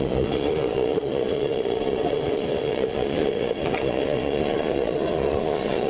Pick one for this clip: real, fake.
fake